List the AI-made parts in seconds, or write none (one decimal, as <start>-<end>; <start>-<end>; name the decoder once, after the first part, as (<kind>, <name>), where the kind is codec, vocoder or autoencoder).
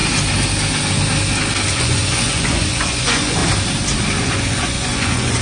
1.7-3.4 (vocoder, Vocos); 4.2-5.4